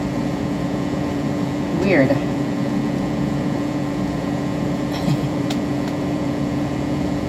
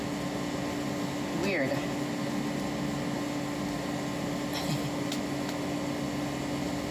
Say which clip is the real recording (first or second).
second